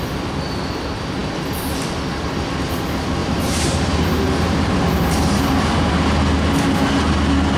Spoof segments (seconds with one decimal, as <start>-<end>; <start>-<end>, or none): 3.2-5.9